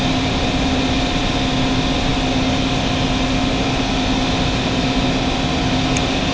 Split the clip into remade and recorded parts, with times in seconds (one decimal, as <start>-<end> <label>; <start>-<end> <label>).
0.0-6.3 recorded